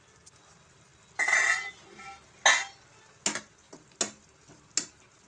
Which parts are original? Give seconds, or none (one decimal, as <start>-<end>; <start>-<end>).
0.0-5.3